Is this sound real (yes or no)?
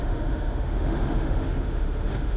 no